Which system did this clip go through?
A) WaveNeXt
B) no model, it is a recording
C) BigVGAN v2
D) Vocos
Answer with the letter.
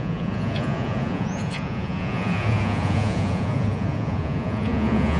D